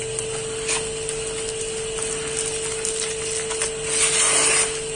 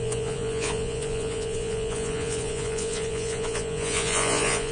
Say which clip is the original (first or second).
first